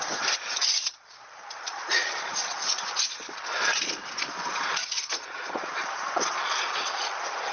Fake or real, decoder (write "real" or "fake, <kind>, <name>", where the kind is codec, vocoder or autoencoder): fake, vocoder, Vocos